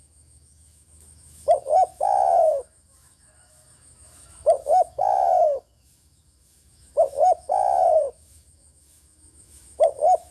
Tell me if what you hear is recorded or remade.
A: remade